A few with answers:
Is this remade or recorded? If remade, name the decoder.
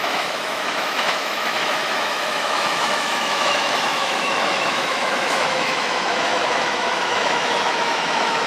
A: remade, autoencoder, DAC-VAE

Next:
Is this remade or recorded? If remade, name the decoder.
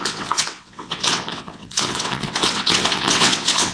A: remade, vocoder, WaveNeXt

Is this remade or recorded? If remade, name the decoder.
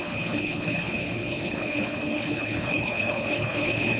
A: remade, codec, HILCodec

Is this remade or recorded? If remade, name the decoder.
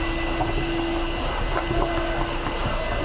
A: recorded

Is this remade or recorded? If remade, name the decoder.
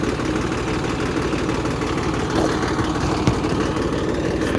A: recorded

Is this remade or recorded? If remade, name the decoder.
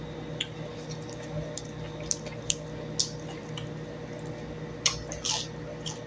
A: recorded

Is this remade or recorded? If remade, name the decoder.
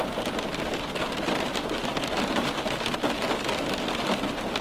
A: recorded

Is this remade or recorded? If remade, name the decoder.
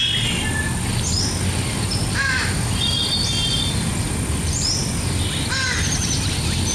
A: recorded